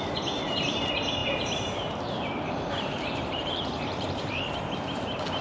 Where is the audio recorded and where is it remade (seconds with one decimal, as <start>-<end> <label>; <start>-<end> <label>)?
0.0-1.2 recorded; 1.2-4.4 remade; 4.4-5.4 recorded